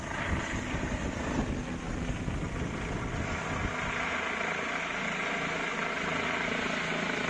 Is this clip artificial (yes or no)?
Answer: no